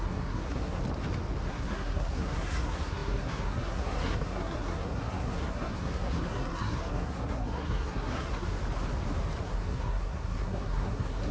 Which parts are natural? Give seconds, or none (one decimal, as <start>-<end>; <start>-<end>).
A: 0.8-1.5; 8.6-9.4